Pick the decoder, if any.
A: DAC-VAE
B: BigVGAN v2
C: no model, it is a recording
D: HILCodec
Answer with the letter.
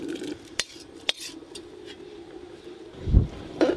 B